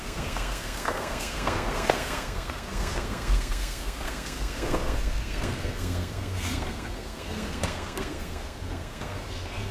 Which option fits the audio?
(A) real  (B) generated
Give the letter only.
B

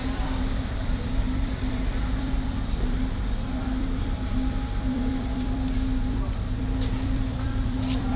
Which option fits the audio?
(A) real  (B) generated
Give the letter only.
B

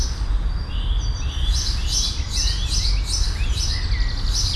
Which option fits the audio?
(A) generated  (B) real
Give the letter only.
B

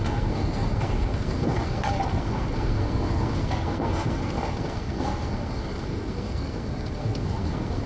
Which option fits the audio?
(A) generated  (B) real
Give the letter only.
A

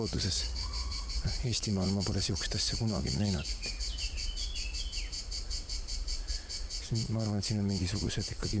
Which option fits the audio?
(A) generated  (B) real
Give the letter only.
A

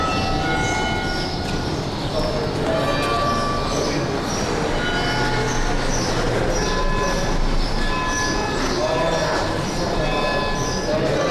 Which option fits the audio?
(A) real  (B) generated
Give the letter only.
A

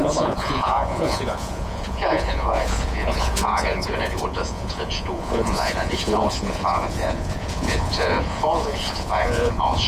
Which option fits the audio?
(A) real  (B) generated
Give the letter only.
B